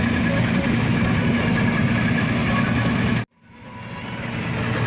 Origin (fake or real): real